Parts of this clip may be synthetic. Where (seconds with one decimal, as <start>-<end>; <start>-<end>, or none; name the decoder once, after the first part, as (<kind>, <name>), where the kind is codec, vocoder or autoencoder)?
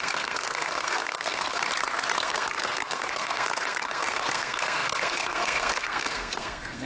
0.0-1.6 (codec, SNAC); 2.2-6.9